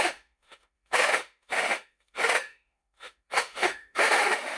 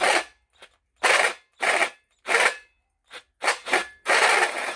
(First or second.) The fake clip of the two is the first